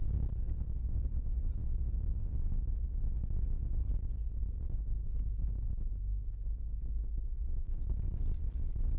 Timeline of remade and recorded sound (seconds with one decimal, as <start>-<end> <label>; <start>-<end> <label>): 0.0-4.4 recorded; 4.4-7.4 remade; 7.4-9.0 recorded